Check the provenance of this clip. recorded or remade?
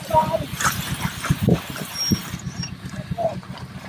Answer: remade